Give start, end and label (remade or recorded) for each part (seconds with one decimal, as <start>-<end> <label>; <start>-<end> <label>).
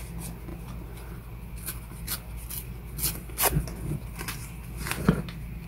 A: 0.0-5.7 recorded